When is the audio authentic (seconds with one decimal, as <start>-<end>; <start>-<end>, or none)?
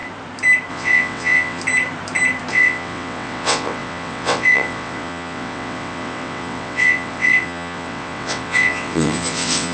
0.0-0.7; 1.6-2.5